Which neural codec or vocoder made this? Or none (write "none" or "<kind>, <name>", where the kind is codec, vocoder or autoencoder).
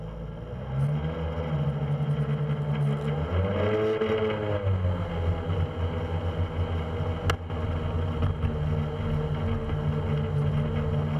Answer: none